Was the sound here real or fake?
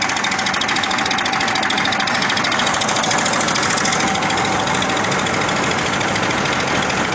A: real